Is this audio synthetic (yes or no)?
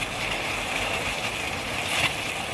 no